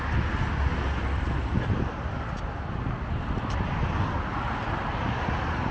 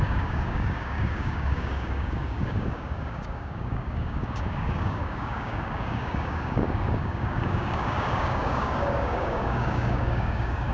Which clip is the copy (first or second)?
second